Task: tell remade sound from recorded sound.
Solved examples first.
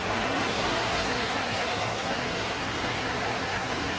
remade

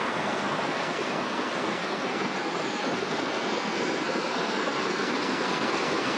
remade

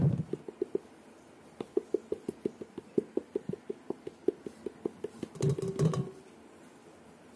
recorded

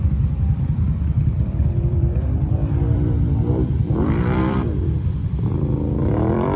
remade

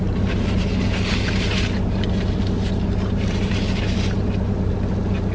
recorded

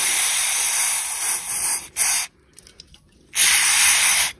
recorded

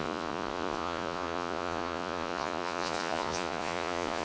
remade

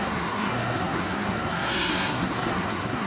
remade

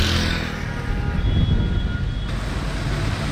recorded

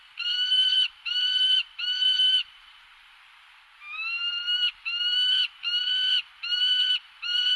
recorded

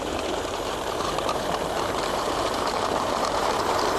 remade